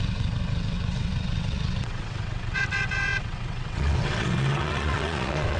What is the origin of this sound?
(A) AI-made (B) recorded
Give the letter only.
A